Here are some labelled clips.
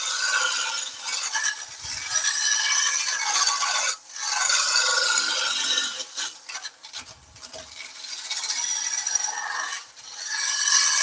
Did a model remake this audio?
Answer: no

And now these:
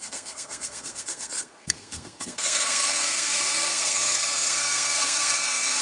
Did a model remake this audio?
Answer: yes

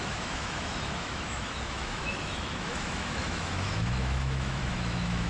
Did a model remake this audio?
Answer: yes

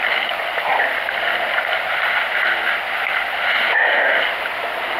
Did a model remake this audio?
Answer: no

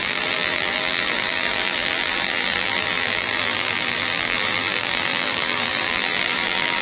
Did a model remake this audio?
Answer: yes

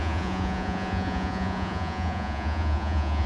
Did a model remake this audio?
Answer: yes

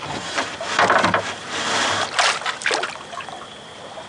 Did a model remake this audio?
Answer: no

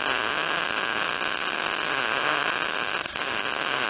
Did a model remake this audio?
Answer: no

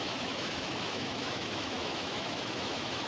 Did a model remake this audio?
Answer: yes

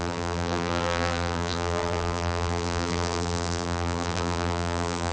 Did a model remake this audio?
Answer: yes